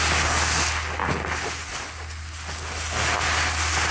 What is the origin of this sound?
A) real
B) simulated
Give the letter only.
A